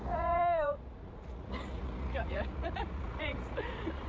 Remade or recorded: remade